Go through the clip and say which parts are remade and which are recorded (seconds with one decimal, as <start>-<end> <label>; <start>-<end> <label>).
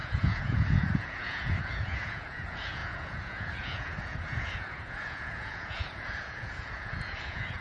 0.0-7.6 remade